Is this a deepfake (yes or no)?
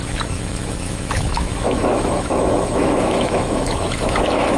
yes